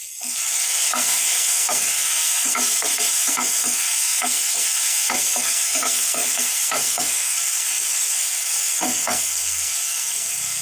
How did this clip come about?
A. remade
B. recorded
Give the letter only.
A